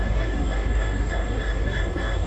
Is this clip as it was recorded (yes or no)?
no